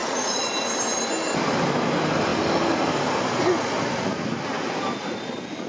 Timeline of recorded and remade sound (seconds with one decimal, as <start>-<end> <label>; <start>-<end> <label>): 0.0-0.5 remade; 0.5-5.7 recorded